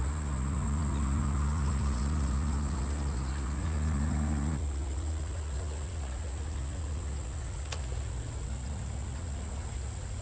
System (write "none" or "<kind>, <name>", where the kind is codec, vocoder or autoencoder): vocoder, Vocos